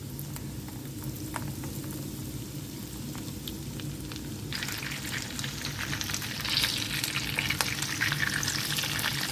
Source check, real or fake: real